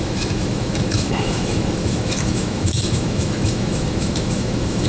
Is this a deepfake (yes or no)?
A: yes